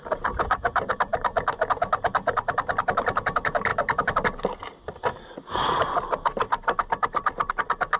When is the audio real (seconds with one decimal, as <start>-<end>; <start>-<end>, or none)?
0.0-8.0